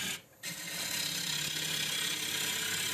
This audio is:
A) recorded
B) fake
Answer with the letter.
A